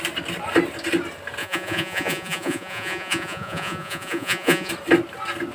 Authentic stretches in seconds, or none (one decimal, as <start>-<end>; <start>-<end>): 0.0-1.4; 4.7-5.5